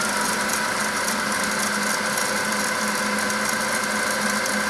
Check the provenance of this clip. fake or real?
real